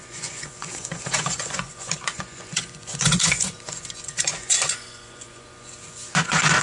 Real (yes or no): no